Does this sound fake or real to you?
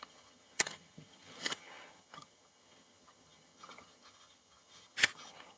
fake